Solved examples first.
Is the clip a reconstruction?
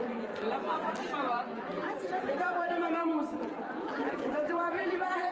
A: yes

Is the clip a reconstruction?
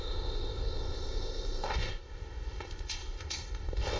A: yes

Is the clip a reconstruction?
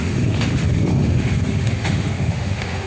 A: yes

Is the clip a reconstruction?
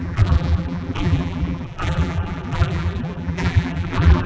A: yes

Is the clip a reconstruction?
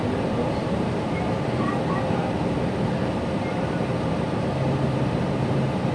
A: yes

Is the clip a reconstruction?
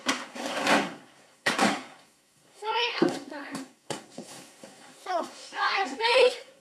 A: yes